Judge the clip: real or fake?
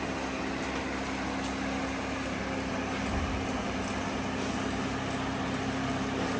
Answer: real